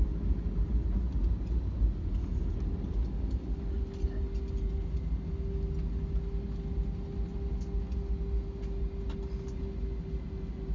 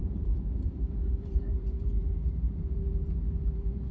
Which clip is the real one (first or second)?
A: first